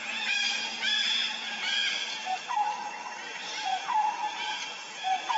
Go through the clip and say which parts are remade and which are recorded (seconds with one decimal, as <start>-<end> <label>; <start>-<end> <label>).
0.0-1.8 remade; 1.8-3.4 recorded; 3.4-5.4 remade